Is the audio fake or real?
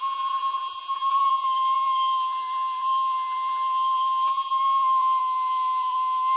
fake